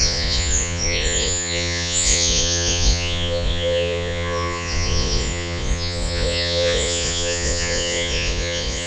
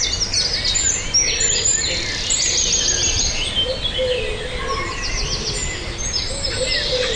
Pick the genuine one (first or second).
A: second